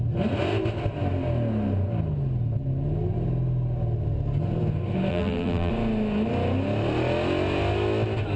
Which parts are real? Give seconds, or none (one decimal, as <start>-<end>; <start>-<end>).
0.0-5.1; 5.7-8.4